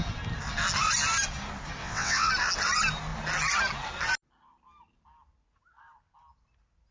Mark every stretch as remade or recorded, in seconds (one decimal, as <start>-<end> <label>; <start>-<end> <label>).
0.0-1.8 recorded; 1.8-2.3 remade; 2.3-6.9 recorded